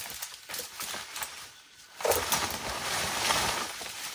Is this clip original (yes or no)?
yes